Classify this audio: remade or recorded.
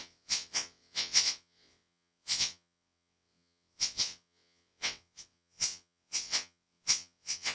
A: remade